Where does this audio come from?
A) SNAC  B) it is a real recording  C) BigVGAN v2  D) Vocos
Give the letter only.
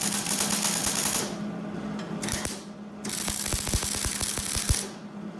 B